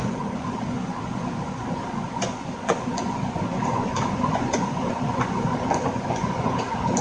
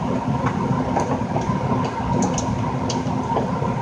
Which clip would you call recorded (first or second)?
second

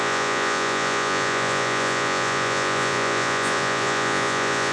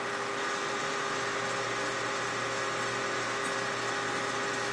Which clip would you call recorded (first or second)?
second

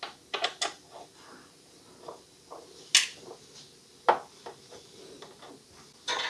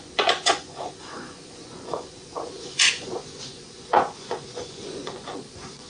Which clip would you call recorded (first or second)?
first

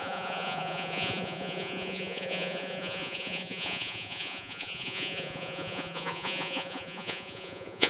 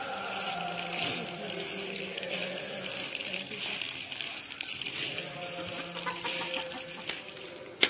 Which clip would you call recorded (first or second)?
second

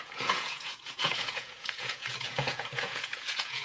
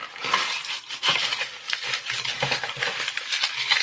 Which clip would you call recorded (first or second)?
second